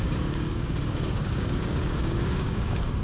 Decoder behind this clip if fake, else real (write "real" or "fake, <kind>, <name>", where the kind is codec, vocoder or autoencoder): fake, codec, DAC